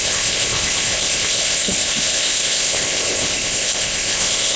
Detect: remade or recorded remade